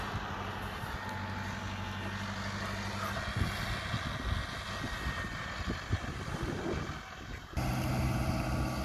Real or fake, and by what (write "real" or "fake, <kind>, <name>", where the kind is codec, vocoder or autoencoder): real